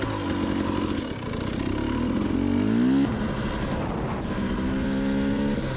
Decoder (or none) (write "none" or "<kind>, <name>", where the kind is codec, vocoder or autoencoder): none